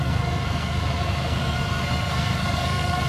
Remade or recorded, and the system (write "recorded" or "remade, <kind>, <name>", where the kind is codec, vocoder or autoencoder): remade, codec, SNAC